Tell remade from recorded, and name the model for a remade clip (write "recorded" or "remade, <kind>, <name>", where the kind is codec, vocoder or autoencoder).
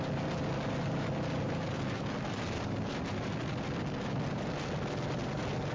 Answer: recorded